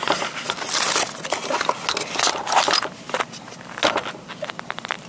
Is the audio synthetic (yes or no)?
no